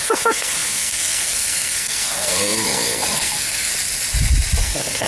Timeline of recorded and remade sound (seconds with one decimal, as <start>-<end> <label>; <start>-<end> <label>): 0.0-3.7 remade; 3.7-4.6 recorded; 4.6-5.1 remade